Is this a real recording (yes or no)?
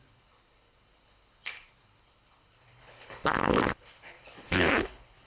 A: no